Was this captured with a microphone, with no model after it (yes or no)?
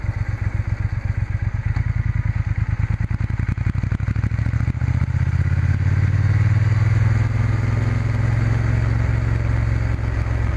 yes